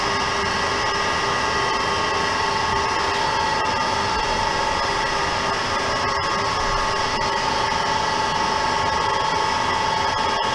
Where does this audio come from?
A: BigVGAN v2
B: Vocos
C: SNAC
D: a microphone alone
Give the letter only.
D